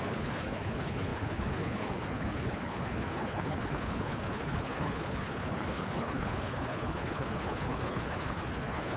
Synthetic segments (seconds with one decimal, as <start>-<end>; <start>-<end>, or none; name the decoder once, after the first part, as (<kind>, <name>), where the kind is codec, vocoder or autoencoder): 0.0-9.0 (codec, HILCodec)